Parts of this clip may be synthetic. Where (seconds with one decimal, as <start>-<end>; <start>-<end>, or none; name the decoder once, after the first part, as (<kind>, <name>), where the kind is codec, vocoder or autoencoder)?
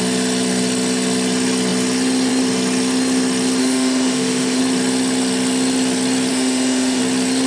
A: 3.6-4.6 (autoencoder, DAC-VAE); 6.3-7.0